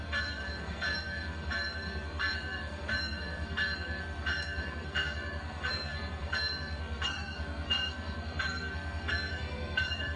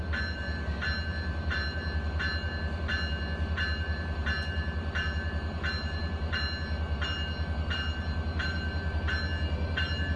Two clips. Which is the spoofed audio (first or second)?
first